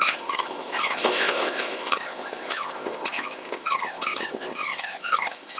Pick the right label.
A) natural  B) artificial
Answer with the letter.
B